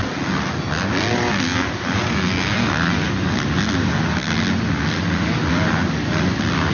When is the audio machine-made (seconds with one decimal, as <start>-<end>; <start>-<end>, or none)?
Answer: none